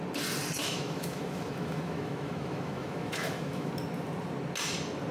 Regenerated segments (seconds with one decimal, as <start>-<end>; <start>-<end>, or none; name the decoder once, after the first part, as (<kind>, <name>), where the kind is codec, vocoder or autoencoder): 0.6-3.7 (autoencoder, DAC-VAE)